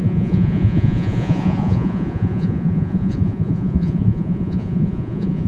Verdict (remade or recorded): remade